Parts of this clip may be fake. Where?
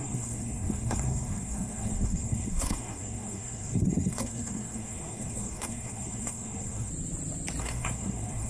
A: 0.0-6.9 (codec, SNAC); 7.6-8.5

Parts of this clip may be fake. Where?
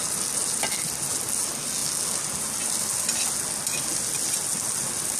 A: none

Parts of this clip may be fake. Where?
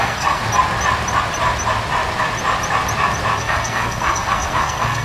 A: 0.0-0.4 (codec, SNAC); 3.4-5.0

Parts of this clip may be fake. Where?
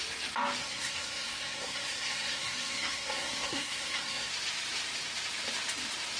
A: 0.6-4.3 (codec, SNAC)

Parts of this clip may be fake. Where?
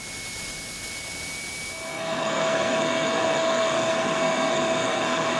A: 1.9-5.4 (codec, SNAC)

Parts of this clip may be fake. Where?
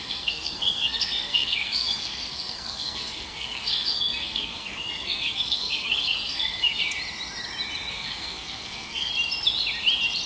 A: 0.0-6.8 (codec, SNAC); 7.9-9.1